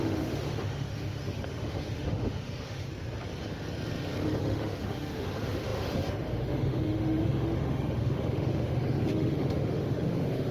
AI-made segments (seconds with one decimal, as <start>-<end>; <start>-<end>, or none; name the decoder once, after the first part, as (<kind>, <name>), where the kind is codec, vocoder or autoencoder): 0.0-2.9 (autoencoder, DAC-VAE); 4.4-10.5